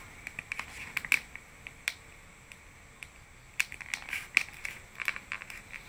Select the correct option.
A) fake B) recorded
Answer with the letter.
B